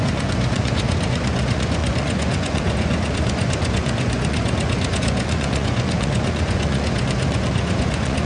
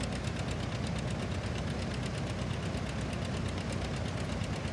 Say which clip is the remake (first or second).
first